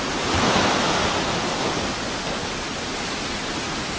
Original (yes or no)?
yes